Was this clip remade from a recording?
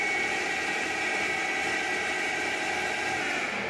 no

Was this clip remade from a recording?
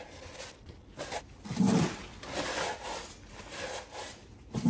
no